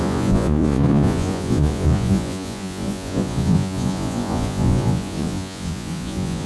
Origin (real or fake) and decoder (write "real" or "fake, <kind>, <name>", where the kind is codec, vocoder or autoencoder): fake, vocoder, Vocos